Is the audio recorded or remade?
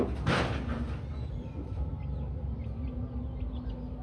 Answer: recorded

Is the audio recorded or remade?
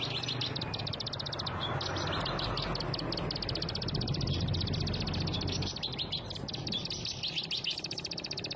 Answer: recorded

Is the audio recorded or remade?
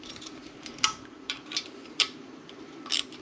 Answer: remade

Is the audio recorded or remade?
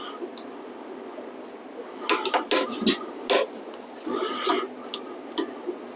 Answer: recorded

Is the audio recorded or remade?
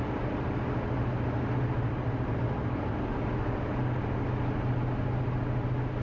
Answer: recorded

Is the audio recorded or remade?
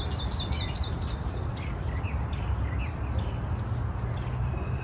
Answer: recorded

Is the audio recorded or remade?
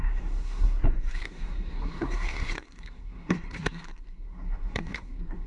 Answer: remade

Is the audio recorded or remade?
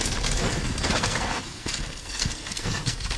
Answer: remade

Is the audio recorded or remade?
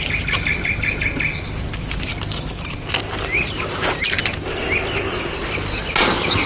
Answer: recorded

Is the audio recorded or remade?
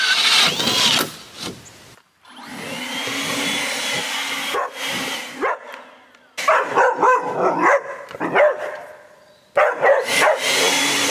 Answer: recorded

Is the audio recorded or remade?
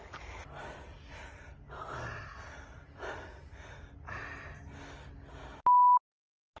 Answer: recorded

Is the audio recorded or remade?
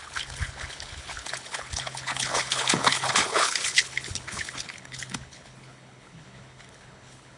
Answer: remade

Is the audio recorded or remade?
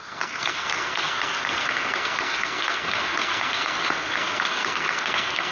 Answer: remade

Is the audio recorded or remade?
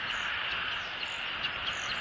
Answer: recorded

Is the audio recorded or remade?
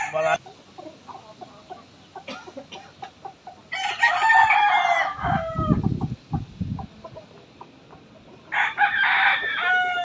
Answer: recorded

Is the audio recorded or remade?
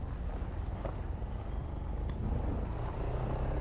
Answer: recorded